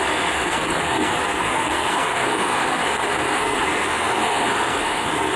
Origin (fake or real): fake